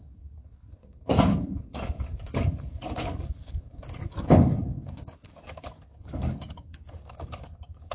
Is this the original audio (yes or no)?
no